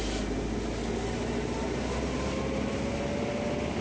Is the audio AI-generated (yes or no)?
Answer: no